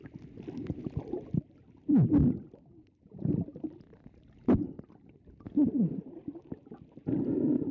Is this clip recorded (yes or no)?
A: yes